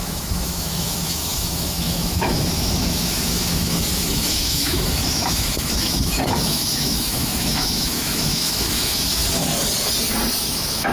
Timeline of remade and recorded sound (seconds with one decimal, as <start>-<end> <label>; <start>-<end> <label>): 0.0-9.2 remade; 9.2-10.4 recorded; 10.4-10.9 remade